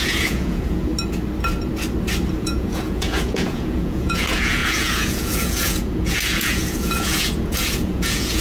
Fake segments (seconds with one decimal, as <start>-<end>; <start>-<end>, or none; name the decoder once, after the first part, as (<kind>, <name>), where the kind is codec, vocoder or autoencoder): 0.0-0.9 (vocoder, Vocos); 2.4-8.4